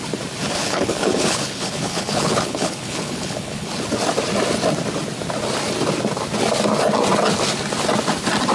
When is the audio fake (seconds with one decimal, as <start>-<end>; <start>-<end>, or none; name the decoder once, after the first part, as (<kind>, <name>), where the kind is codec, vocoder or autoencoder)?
0.6-3.8 (codec, HILCodec)